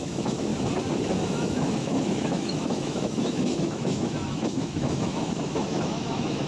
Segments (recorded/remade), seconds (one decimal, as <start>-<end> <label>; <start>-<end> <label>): 0.0-0.5 remade; 0.5-1.1 recorded; 1.1-6.5 remade